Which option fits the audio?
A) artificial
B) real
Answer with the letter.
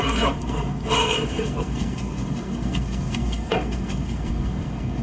A